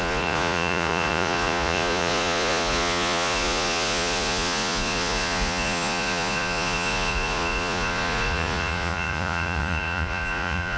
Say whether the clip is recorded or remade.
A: remade